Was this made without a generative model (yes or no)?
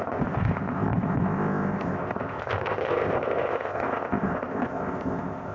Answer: no